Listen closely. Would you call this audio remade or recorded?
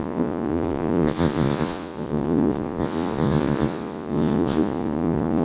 remade